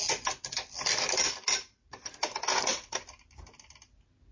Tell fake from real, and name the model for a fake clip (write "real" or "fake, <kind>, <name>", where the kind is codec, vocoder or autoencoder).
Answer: real